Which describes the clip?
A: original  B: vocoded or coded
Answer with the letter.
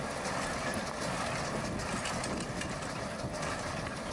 A